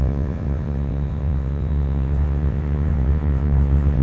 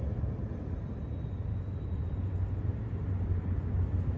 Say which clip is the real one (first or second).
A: second